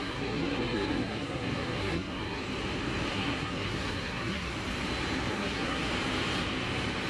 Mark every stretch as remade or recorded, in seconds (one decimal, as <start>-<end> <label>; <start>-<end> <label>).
0.0-2.4 remade; 2.4-3.1 recorded; 3.1-4.5 remade; 4.5-5.3 recorded; 5.3-5.9 remade; 5.9-7.1 recorded